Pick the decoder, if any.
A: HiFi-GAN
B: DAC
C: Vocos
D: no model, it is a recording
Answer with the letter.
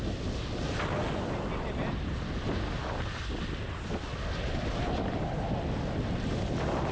D